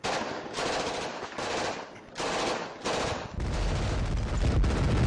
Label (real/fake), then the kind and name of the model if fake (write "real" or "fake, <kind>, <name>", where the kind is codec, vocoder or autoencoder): real